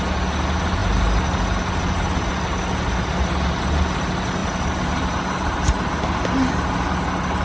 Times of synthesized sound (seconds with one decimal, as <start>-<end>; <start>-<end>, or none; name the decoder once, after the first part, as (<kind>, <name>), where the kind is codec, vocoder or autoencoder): 4.4-5.9 (vocoder, BigVGAN v2)